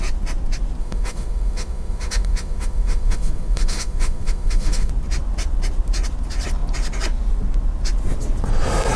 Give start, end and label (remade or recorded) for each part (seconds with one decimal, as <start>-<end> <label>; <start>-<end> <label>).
0.0-0.8 recorded; 0.8-4.9 remade; 4.9-9.0 recorded